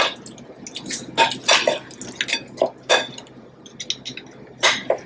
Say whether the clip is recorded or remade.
recorded